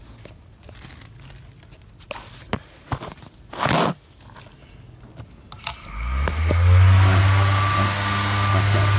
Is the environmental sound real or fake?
real